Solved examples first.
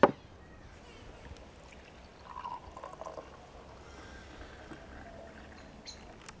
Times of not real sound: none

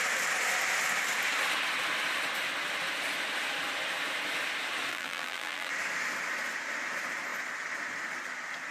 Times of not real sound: 4.9-5.7 (vocoder, BigVGAN v2)

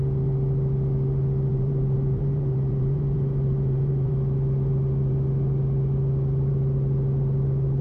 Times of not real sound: 1.5-4.1 (vocoder, BigVGAN v2)

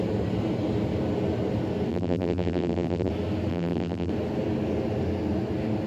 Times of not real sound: 1.9-3.1 (vocoder, BigVGAN v2); 3.5-4.1